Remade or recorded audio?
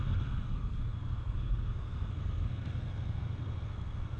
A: remade